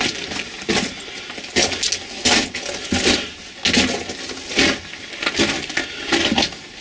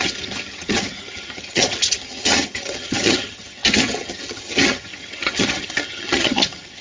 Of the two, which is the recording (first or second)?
first